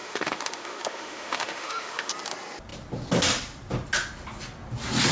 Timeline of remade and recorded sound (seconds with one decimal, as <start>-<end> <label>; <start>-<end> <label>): 0.0-2.1 remade; 2.1-5.1 recorded